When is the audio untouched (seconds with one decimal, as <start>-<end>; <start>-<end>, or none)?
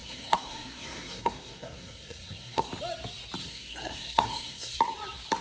2.7-3.4; 4.8-5.4